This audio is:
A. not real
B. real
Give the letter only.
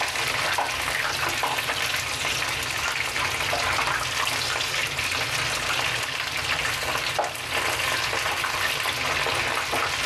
B